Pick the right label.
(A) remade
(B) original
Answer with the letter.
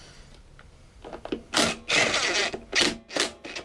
B